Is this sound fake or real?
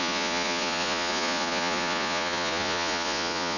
fake